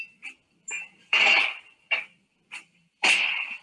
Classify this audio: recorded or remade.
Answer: remade